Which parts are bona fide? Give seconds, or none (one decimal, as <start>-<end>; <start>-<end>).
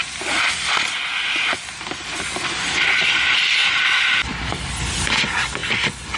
0.0-6.2